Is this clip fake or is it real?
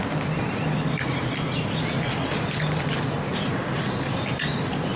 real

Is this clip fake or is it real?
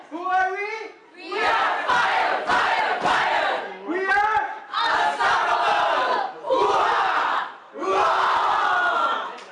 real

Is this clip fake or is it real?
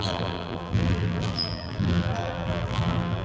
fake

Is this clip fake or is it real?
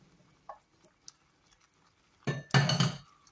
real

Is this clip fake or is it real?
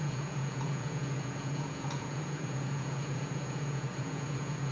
fake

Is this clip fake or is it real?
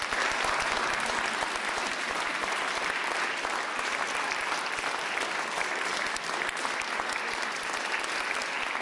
real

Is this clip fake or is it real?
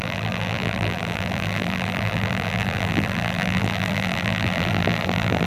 fake